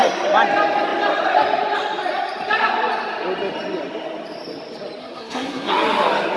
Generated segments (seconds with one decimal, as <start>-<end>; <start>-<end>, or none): 5.0-5.7